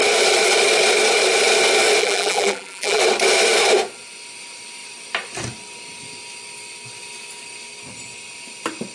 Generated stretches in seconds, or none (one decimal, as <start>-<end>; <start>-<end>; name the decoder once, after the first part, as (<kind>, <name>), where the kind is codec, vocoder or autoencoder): 2.0-3.0 (vocoder, BigVGAN v2)